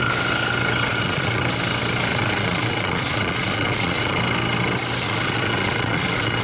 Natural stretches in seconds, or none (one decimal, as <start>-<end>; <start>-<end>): 0.0-0.9; 1.4-2.1; 4.2-5.0